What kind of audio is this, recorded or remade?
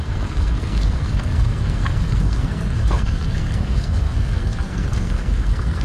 remade